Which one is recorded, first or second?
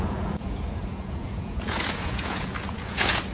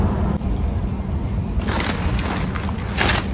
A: second